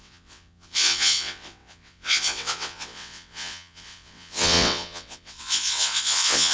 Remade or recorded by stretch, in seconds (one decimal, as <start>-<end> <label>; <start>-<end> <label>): 0.0-6.5 remade